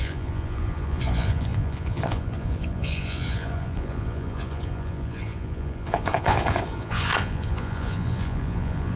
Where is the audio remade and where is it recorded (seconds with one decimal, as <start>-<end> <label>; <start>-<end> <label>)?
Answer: 0.0-9.0 remade